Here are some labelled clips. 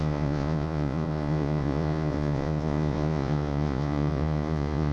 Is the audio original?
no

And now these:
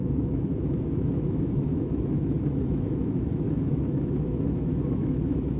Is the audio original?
no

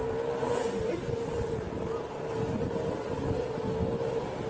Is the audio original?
yes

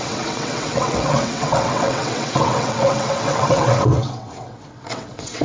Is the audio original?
no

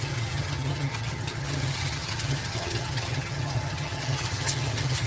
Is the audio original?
no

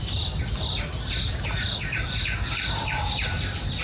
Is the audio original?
yes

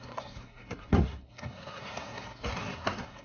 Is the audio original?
no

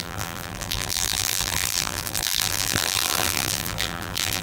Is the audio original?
no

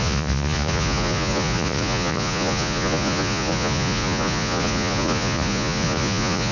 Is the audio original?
no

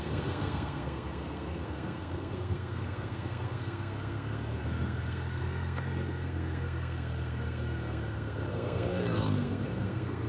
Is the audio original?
no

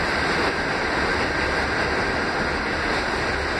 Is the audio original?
yes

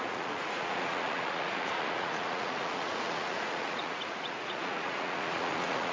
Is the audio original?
no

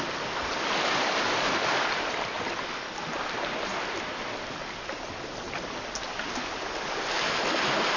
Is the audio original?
yes